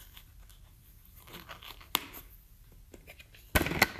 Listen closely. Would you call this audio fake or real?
real